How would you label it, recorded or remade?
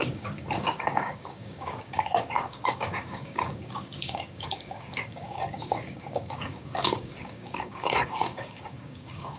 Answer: remade